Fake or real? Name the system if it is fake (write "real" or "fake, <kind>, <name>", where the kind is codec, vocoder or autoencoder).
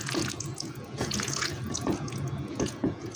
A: fake, vocoder, Vocos